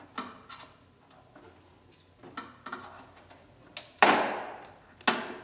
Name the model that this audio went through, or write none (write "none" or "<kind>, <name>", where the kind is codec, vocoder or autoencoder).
none